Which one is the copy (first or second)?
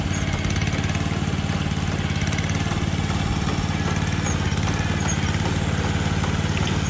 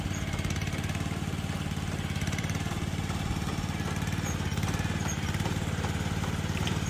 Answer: second